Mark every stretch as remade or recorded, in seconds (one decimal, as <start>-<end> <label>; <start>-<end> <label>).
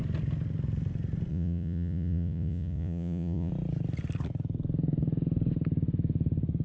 0.0-1.3 recorded; 1.3-3.5 remade; 3.5-6.6 recorded